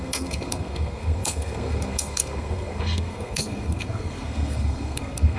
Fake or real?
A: fake